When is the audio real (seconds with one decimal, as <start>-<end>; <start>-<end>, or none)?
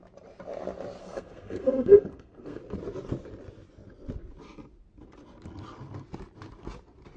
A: 0.0-1.0; 2.6-7.2